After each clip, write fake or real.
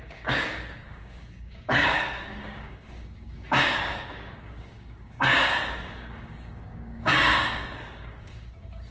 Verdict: fake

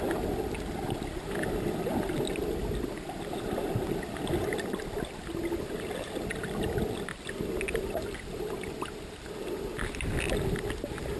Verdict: real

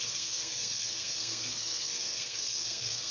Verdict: fake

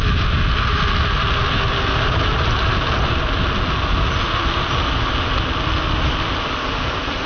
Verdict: real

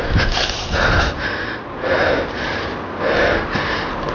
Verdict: real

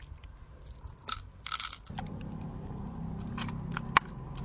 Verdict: real